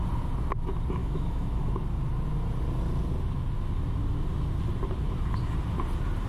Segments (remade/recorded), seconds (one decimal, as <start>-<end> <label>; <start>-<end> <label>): 0.0-1.0 recorded; 1.0-1.7 remade; 1.7-6.3 recorded